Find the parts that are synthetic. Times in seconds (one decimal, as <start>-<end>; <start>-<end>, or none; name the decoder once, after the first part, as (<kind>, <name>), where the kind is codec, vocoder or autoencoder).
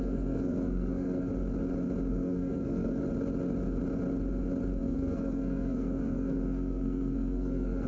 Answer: 0.0-1.3 (codec, SNAC); 2.1-3.0; 4.8-7.9